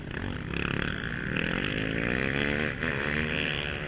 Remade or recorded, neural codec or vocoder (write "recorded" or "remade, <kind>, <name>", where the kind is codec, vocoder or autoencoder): recorded